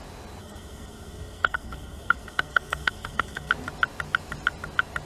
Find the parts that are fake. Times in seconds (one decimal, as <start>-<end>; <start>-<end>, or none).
0.4-3.5